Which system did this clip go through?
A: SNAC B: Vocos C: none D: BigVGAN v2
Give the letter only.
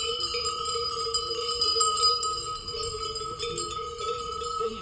D